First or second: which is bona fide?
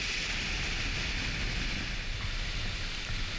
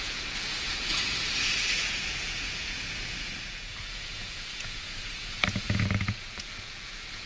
first